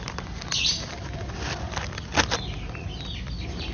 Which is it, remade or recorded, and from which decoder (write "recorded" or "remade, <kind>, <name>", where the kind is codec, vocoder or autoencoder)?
recorded